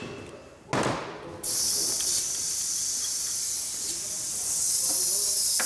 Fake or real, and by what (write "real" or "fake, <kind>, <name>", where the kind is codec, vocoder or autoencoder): real